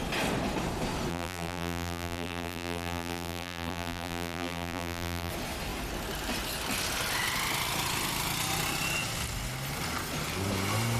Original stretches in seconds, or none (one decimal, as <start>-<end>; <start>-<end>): 0.0-1.1; 5.3-11.0

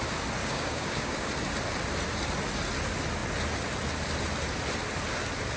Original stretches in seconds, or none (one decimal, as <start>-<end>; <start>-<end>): 0.0-0.4; 1.3-5.6